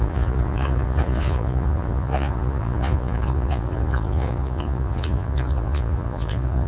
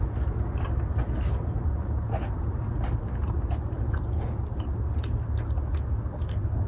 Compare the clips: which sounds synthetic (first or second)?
first